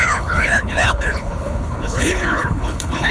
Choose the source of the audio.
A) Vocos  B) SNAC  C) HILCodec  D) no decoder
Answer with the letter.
C